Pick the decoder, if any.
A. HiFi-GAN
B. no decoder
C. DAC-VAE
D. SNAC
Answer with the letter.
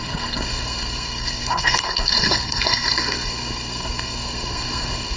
D